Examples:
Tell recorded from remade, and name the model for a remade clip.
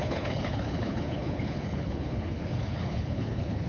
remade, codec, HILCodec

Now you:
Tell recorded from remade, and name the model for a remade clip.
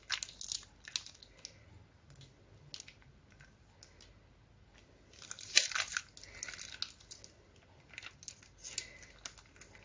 recorded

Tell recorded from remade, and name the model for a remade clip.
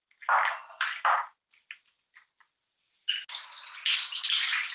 recorded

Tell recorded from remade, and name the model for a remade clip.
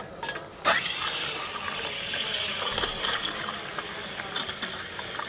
recorded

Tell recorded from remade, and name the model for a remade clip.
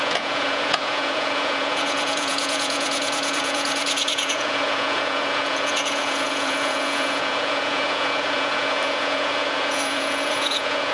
remade, vocoder, Vocos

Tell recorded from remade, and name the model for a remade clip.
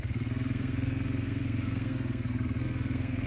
remade, codec, SNAC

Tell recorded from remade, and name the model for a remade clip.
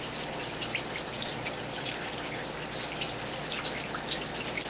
recorded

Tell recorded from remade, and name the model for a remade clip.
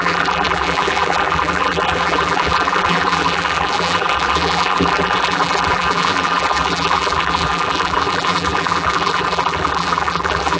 remade, vocoder, BigVGAN v2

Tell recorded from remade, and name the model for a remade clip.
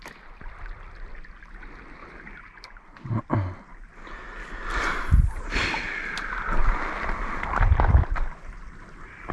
recorded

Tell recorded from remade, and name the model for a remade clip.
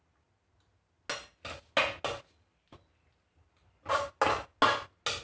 recorded